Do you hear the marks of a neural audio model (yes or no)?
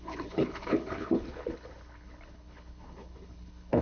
yes